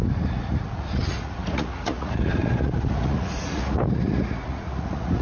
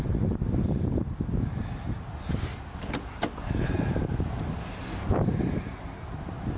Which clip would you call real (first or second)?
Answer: second